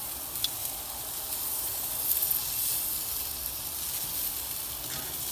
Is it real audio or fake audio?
real